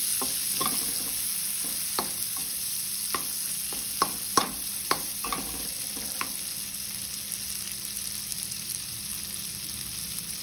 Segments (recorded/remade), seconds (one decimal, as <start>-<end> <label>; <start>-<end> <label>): 0.0-2.4 recorded; 2.4-3.0 remade; 3.0-4.4 recorded; 4.4-5.8 remade; 5.8-8.3 recorded; 8.3-9.0 remade; 9.0-10.4 recorded